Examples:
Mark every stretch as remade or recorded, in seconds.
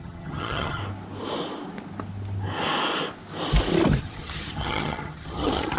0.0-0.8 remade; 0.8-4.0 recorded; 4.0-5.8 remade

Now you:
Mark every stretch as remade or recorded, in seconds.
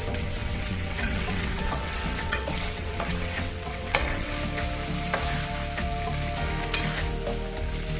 0.0-4.3 remade; 4.3-8.0 recorded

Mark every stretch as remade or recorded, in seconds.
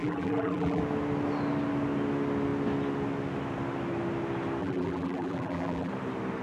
0.0-0.8 remade; 0.8-4.6 recorded; 4.6-5.9 remade; 5.9-6.4 recorded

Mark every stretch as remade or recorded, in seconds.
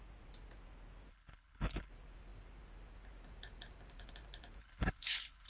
0.0-1.1 recorded; 1.1-1.9 remade; 1.9-4.6 recorded; 4.6-5.5 remade